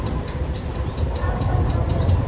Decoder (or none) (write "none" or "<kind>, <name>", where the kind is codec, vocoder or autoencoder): none